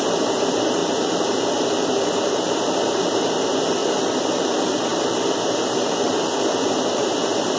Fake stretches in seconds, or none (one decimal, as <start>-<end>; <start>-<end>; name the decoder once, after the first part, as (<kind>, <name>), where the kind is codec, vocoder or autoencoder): 0.0-7.6 (vocoder, BigVGAN v2)